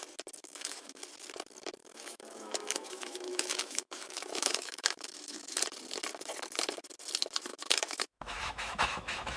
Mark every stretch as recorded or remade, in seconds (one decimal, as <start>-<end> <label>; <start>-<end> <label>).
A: 0.0-0.4 recorded; 0.4-1.0 remade; 1.0-1.8 recorded; 1.8-5.6 remade; 5.6-7.5 recorded; 7.5-9.4 remade